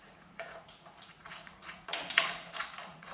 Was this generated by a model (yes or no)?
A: yes